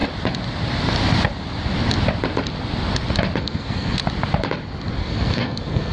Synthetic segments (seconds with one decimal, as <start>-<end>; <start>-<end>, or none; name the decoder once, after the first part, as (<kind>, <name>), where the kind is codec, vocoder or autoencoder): 3.4-4.0 (codec, SNAC); 5.0-5.9